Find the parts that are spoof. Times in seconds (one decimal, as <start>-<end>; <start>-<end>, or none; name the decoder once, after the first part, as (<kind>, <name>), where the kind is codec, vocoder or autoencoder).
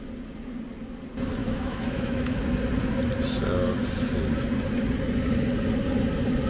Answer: 1.4-2.4 (autoencoder, DAC-VAE)